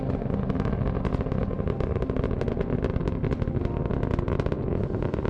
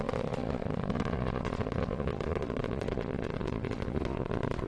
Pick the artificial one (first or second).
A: second